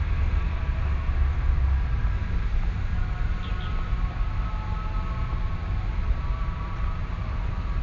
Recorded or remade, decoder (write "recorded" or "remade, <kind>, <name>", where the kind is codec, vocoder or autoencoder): recorded